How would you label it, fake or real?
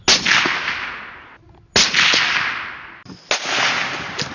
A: real